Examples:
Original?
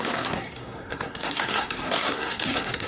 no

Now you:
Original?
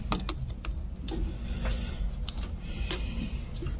yes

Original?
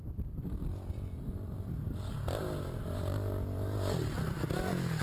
yes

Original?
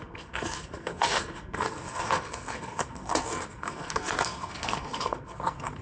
no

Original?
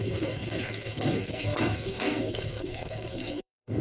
no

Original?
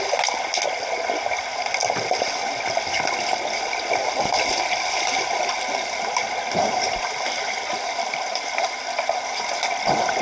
yes